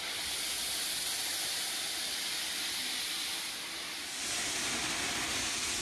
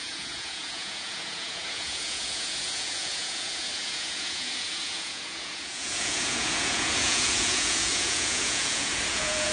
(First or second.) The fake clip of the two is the second